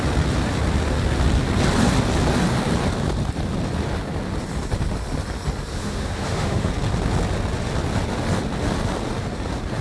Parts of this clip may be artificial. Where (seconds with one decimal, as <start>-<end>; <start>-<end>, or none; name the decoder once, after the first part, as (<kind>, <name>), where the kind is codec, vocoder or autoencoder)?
5.7-6.7 (autoencoder, DAC-VAE)